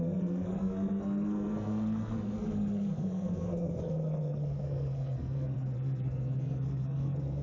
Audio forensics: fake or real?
fake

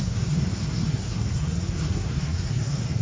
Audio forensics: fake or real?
fake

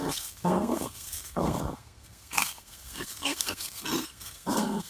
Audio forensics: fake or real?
fake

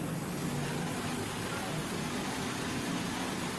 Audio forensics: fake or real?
real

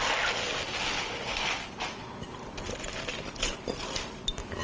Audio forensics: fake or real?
real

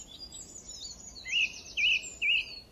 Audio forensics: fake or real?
real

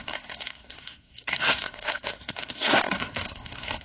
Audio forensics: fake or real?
fake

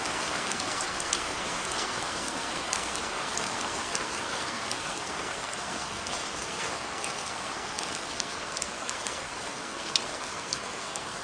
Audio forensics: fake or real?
fake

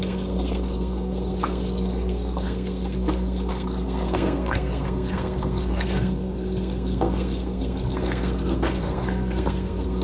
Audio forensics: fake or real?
fake